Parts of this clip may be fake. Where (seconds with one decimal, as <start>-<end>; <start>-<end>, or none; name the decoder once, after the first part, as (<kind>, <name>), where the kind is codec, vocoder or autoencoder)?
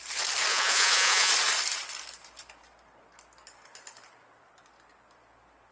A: 0.5-1.3 (vocoder, Vocos)